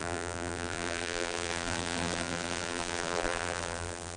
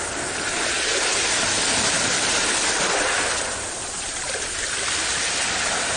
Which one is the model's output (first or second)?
first